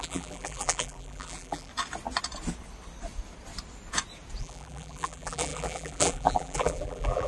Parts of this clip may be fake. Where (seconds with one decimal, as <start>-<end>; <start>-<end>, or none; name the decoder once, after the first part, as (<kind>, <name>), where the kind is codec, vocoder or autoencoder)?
0.0-1.7 (vocoder, BigVGAN v2); 4.4-7.3